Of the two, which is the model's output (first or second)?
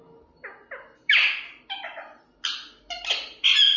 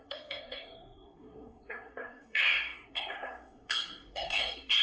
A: second